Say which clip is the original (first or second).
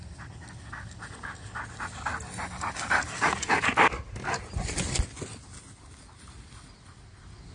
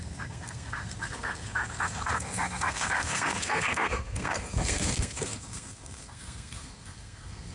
first